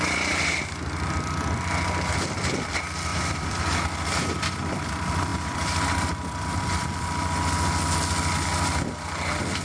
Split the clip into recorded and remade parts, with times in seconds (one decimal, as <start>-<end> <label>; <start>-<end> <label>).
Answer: 0.0-3.1 recorded; 3.1-3.8 remade; 3.8-5.3 recorded; 5.3-6.6 remade; 6.6-9.6 recorded